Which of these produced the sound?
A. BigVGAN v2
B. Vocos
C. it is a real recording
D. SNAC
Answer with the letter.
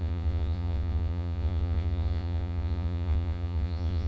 B